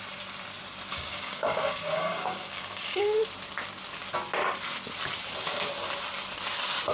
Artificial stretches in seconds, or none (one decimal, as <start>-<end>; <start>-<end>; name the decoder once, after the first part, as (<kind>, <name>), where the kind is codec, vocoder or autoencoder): 0.9-3.2 (codec, DAC)